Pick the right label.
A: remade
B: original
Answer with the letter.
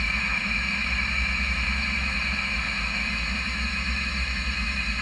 A